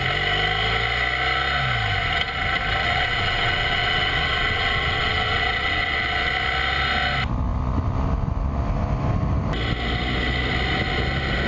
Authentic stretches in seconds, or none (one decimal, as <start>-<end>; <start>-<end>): 0.0-2.8; 6.3-11.5